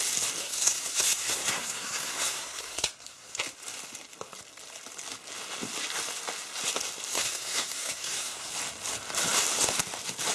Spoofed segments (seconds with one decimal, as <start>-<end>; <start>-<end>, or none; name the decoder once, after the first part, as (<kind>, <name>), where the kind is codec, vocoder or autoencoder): 0.4-3.4 (codec, SNAC); 7.1-8.5